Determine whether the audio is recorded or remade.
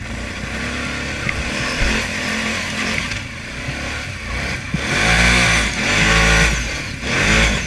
recorded